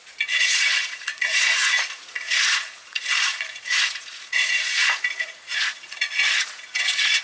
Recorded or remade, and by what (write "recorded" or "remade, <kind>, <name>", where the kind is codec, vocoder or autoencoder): remade, vocoder, Vocos